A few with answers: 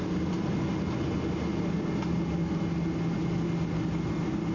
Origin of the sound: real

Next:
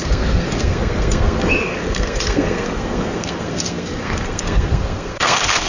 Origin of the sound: fake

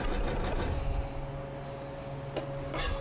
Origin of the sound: real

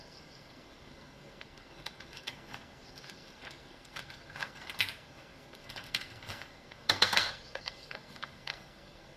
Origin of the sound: fake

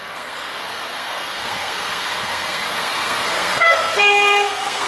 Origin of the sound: fake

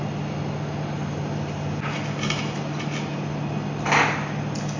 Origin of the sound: real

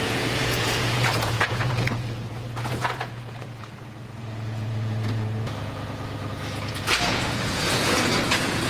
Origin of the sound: fake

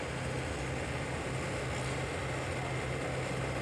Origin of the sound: real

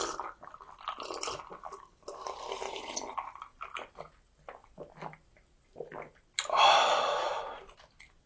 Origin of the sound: real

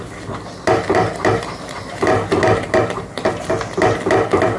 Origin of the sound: real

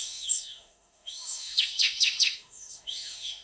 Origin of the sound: fake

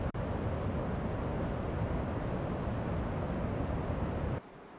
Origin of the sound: real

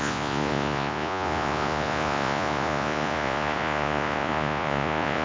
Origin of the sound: fake